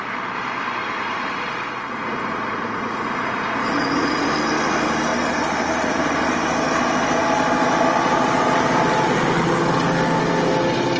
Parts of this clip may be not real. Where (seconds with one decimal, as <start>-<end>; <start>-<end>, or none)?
0.8-4.3